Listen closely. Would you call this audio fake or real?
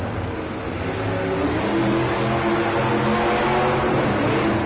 real